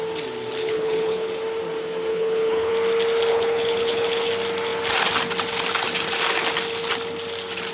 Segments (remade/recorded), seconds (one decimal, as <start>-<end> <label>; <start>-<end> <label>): 0.0-0.6 recorded; 0.6-1.3 remade; 1.3-2.1 recorded; 2.1-2.7 remade; 2.7-3.3 recorded; 3.3-4.3 remade; 4.3-7.7 recorded